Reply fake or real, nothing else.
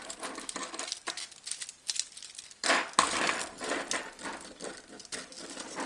real